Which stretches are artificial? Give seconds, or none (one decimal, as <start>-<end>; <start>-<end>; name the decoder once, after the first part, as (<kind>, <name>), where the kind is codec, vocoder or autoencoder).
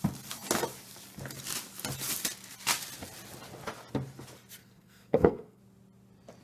4.6-5.6 (codec, SNAC)